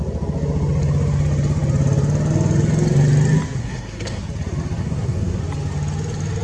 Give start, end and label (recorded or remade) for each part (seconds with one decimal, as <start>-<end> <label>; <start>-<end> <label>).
0.0-3.6 recorded; 3.6-4.2 remade; 4.2-4.8 recorded; 4.8-5.4 remade; 5.4-6.4 recorded